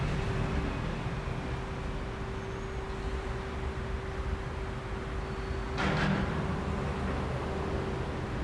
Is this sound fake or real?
real